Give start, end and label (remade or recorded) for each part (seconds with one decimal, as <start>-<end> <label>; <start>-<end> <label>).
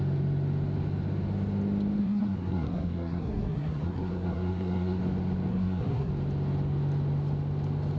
0.0-2.0 recorded; 2.0-5.0 remade; 5.0-5.5 recorded; 5.5-6.1 remade; 6.1-8.0 recorded